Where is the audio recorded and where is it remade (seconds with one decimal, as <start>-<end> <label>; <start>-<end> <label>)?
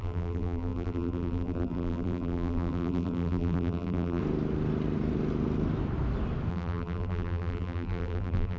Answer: 0.0-4.2 remade; 4.2-6.5 recorded; 6.5-8.6 remade